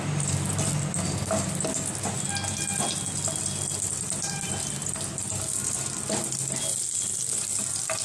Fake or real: real